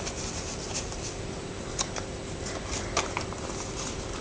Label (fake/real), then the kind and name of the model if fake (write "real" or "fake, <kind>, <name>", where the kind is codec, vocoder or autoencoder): real